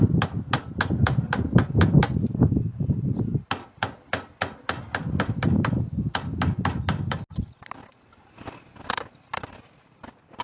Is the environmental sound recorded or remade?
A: recorded